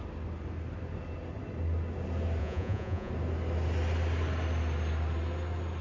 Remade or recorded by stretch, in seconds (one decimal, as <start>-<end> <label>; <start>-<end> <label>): 0.0-2.4 recorded; 2.4-3.1 remade; 3.1-5.8 recorded